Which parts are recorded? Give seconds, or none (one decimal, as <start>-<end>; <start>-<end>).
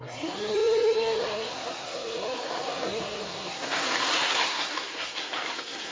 none